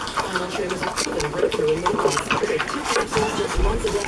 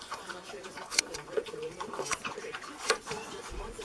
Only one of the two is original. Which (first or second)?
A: first